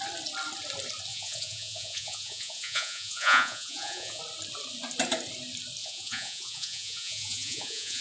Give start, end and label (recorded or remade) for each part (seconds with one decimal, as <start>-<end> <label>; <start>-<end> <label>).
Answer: 0.0-1.1 recorded; 1.1-4.2 remade; 4.2-5.8 recorded; 5.8-8.0 remade